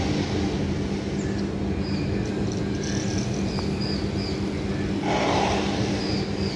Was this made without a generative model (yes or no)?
yes